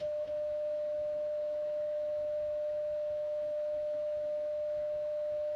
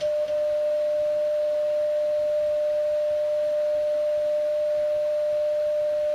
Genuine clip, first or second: second